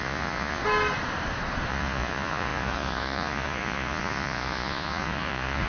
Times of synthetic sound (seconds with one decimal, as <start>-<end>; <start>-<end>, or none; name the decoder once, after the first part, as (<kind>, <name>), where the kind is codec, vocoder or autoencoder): 0.0-0.6 (vocoder, Vocos); 1.7-5.7